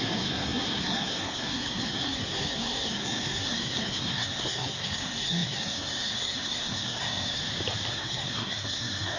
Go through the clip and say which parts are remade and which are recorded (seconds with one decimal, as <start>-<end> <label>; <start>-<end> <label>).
0.0-7.4 remade; 7.4-7.9 recorded; 7.9-9.2 remade